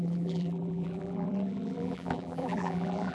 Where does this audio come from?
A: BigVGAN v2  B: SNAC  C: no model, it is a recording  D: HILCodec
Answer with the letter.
A